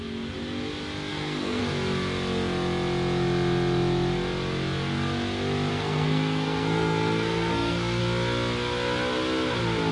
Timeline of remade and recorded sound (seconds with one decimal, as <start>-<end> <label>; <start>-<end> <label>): 0.0-1.1 recorded; 1.1-1.6 remade; 1.6-5.7 recorded; 5.7-8.0 remade; 8.0-9.9 recorded